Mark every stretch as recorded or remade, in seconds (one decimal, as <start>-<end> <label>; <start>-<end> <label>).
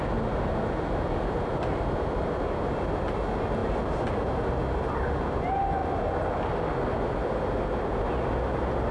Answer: 0.0-8.9 recorded